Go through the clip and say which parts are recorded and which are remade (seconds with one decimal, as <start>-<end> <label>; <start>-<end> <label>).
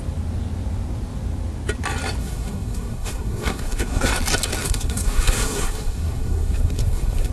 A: 0.0-2.2 recorded; 2.2-4.1 remade; 4.1-4.6 recorded; 4.6-7.3 remade